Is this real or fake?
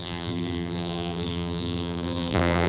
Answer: fake